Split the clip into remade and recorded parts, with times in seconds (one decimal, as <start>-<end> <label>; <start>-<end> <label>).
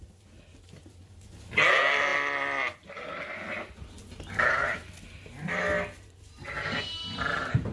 0.0-7.7 recorded